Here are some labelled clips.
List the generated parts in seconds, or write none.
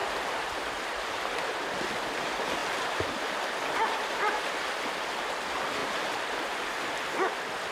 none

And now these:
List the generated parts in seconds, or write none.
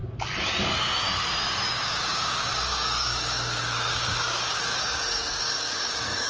1.7-6.3 (codec, DAC)